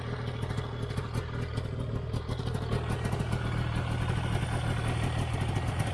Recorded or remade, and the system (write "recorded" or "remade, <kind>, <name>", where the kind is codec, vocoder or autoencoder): recorded